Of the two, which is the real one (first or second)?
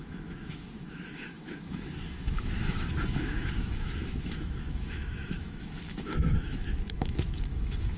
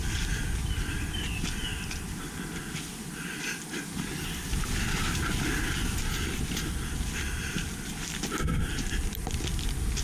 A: second